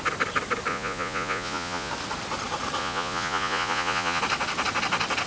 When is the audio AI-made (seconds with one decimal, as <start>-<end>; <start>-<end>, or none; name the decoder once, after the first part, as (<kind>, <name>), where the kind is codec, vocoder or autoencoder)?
0.7-1.9 (vocoder, Vocos); 2.8-4.2